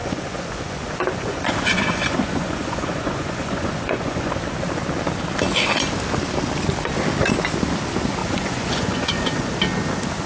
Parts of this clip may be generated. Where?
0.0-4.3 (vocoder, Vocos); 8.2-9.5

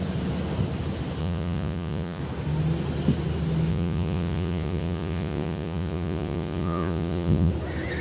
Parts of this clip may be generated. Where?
1.2-2.2 (vocoder, Vocos); 3.7-7.5

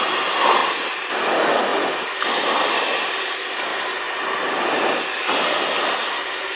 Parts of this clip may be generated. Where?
none